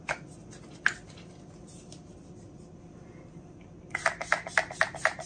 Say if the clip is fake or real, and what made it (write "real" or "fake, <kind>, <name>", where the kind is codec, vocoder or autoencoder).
real